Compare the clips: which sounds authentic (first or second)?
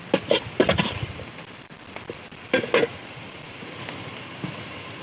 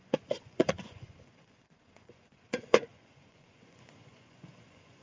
first